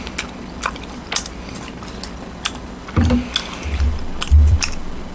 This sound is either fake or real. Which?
real